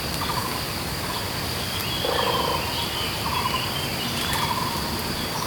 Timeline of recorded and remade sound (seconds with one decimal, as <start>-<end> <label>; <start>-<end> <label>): 0.0-1.8 remade; 1.8-5.1 recorded; 5.1-5.5 remade